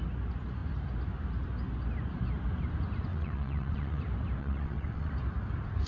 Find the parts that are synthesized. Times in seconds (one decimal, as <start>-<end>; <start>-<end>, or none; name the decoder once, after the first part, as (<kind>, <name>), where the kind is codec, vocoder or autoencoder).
3.1-4.0 (vocoder, WaveNeXt); 4.4-5.1